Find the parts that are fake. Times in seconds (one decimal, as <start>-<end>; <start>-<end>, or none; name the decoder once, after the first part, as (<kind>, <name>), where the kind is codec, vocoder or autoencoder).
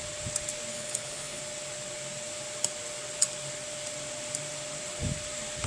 0.7-1.4 (codec, HILCodec)